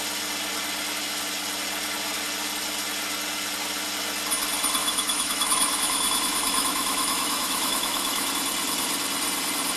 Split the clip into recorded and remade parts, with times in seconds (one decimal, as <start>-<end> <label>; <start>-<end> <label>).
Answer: 0.0-4.8 recorded; 4.8-8.3 remade; 8.3-9.8 recorded